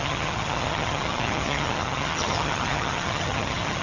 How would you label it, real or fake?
fake